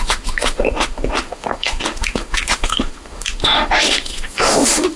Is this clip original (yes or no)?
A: no